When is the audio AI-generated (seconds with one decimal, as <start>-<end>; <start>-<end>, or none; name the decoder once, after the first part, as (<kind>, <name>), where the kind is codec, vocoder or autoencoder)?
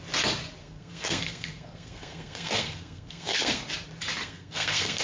0.6-3.6 (codec, SNAC); 4.2-5.0